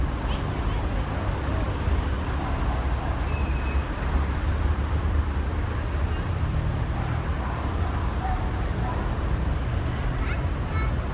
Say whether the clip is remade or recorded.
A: recorded